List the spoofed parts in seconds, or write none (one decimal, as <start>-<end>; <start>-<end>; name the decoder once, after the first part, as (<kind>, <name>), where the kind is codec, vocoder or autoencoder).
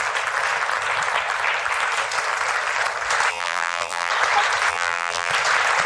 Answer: 3.3-4.1 (vocoder, BigVGAN v2); 4.7-5.3